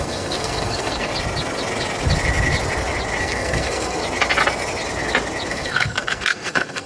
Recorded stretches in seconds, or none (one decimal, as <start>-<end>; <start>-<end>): 1.1-3.2; 4.0-5.5